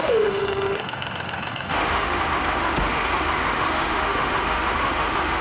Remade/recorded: remade